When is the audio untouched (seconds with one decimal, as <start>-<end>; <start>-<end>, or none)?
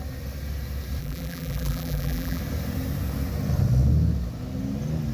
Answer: 0.0-1.0; 2.4-5.1